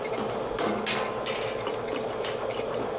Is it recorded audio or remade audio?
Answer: recorded